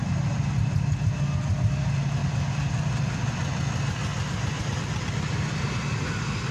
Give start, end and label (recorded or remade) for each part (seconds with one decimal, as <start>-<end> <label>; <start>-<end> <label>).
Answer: 0.0-2.2 recorded; 2.2-3.3 remade; 3.3-4.1 recorded; 4.1-4.8 remade; 4.8-6.5 recorded